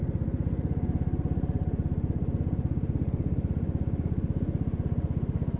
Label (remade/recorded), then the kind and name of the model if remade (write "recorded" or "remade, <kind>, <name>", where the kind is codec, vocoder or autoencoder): recorded